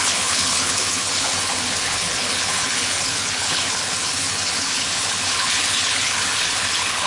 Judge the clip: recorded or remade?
remade